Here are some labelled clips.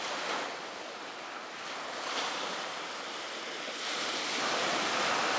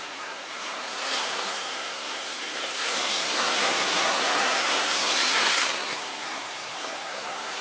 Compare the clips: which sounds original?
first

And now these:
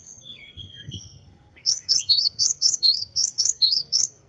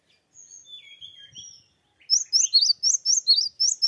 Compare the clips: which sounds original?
second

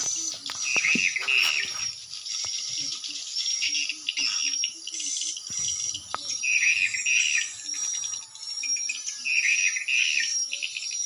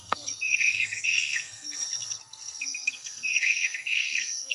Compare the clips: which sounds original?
first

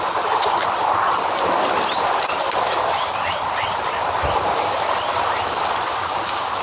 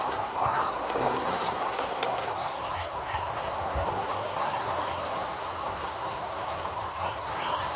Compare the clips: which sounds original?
first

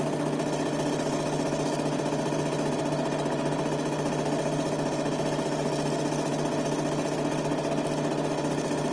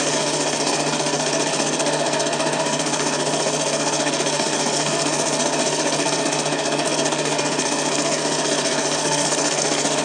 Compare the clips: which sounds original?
first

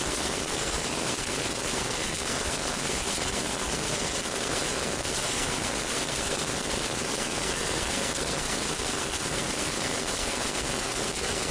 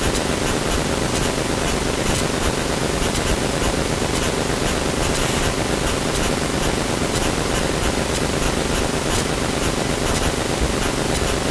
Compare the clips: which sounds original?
second